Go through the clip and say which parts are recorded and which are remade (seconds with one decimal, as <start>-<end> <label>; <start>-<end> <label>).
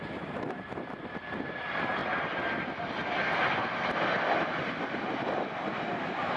0.0-6.4 recorded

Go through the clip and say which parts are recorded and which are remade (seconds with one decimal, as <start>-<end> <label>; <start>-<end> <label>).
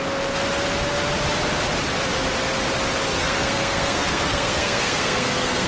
0.0-3.1 recorded; 3.1-5.7 remade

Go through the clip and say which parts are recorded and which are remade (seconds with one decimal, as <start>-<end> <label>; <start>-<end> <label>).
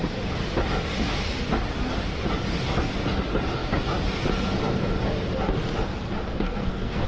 0.0-6.3 recorded; 6.3-7.1 remade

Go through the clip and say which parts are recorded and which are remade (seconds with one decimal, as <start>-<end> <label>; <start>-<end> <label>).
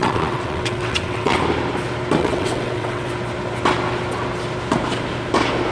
0.0-1.4 remade; 1.4-2.2 recorded; 2.2-3.1 remade; 3.1-5.7 recorded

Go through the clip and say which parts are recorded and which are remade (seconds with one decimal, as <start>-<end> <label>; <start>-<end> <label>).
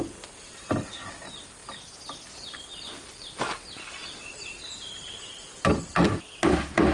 0.0-6.9 recorded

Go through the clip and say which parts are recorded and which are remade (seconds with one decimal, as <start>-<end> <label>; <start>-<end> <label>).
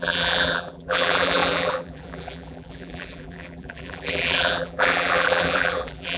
0.0-6.2 remade